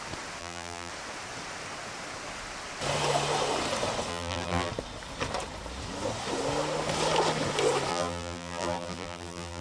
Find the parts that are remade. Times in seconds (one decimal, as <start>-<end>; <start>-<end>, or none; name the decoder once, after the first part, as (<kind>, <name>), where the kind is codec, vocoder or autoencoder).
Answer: 0.4-0.9 (vocoder, BigVGAN v2); 4.1-4.7; 7.9-9.6